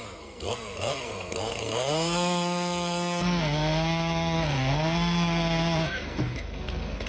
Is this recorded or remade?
remade